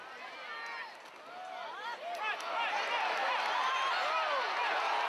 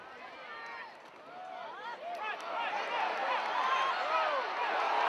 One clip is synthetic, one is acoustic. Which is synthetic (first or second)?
second